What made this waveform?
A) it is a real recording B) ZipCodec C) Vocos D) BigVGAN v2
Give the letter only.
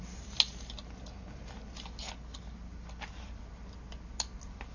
A